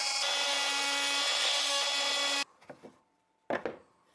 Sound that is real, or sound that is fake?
real